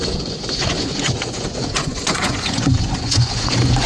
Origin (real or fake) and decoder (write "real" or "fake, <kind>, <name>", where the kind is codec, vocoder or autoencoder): fake, vocoder, Vocos